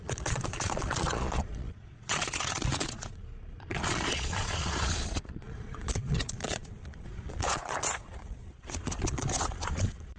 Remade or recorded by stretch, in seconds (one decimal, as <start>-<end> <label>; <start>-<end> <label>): 0.0-10.2 remade